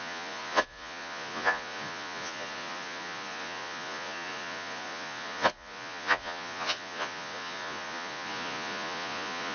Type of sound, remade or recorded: remade